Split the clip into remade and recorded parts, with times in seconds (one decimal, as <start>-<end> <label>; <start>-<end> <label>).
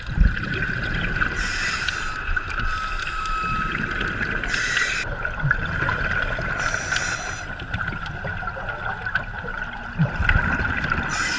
0.0-11.4 recorded